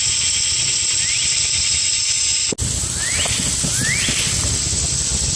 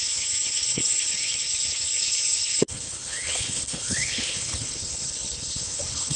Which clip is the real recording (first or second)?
first